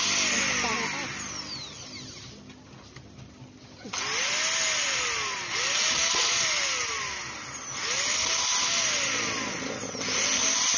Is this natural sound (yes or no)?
yes